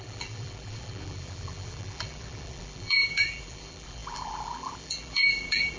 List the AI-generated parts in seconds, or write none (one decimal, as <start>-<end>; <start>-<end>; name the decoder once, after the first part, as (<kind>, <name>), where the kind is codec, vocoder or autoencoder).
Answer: 0.0-5.8 (vocoder, BigVGAN v2)